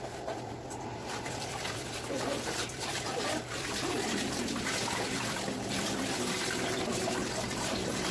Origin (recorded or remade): remade